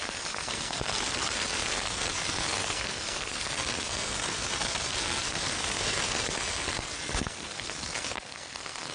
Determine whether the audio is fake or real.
fake